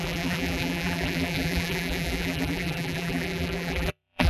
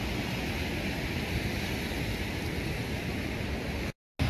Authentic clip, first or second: second